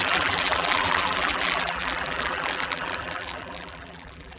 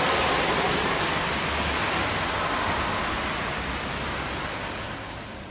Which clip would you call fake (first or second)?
first